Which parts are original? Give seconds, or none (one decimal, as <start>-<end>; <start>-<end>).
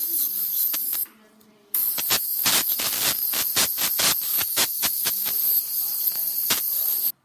0.0-4.4; 5.3-7.2